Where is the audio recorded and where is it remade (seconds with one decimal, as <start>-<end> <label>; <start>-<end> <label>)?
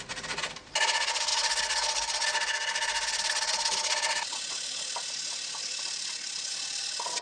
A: 0.0-7.2 recorded